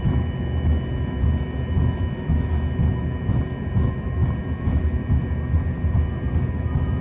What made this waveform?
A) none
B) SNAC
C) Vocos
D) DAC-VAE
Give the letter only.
A